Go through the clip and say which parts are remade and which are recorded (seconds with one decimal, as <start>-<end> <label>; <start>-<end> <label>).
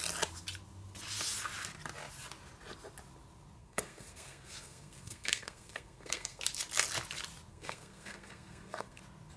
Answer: 0.0-3.6 recorded; 3.6-6.4 remade; 6.4-7.5 recorded; 7.5-9.0 remade; 9.0-9.4 recorded